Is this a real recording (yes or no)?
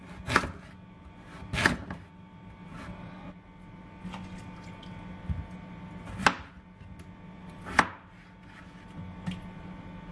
yes